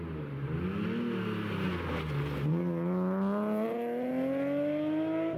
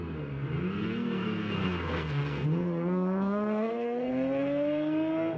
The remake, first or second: second